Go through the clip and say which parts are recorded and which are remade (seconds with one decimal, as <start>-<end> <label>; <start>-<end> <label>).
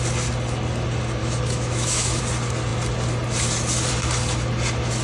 0.0-1.2 recorded; 1.2-2.2 remade; 2.2-5.0 recorded